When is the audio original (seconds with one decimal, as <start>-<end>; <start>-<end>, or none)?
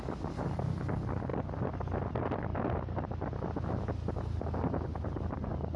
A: 0.0-5.8